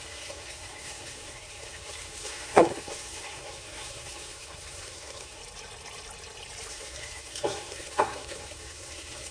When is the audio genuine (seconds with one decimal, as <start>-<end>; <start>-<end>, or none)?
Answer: 5.4-6.7